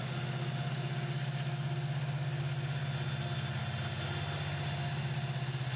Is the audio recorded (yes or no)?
yes